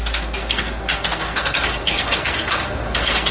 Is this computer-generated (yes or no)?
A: yes